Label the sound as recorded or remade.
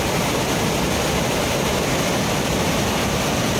remade